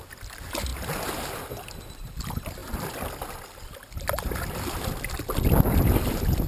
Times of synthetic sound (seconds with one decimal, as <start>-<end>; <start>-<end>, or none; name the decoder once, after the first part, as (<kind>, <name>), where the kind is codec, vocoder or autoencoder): none